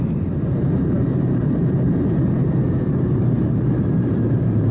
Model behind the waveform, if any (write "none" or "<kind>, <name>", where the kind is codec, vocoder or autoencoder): vocoder, BigVGAN v2